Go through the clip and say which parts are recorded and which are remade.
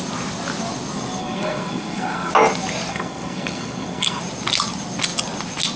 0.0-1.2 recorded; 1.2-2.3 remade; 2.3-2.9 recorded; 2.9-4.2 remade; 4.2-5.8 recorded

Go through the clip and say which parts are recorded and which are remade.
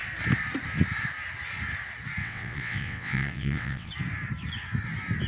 0.0-2.2 recorded; 2.2-3.9 remade; 3.9-5.3 recorded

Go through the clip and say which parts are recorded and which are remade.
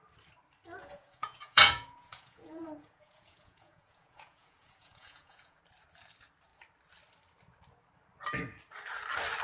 0.0-0.8 recorded; 0.8-5.6 remade; 5.6-9.4 recorded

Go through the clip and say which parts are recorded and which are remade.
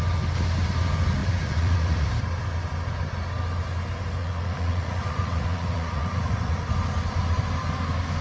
0.0-1.2 recorded; 1.2-2.1 remade; 2.1-4.2 recorded; 4.2-6.7 remade; 6.7-8.2 recorded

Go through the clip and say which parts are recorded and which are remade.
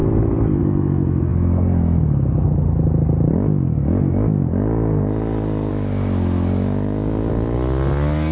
0.0-8.3 recorded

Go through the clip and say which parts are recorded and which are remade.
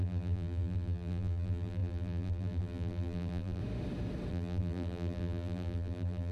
0.0-3.6 remade; 3.6-4.3 recorded; 4.3-6.3 remade